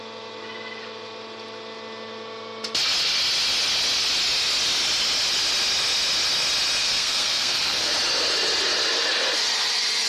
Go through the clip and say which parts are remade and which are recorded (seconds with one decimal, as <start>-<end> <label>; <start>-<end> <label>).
0.0-6.8 recorded; 6.8-7.9 remade; 7.9-10.1 recorded